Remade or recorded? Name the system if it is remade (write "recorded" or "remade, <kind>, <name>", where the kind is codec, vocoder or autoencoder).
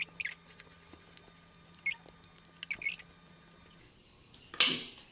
recorded